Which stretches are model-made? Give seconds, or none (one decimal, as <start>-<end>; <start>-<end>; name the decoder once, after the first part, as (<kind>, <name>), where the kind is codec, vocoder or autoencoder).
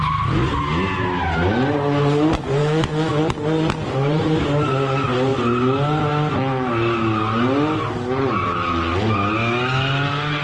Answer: 2.6-3.2 (autoencoder, DAC-VAE)